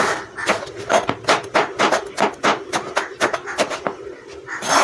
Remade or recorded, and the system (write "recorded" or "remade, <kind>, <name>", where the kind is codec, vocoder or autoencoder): recorded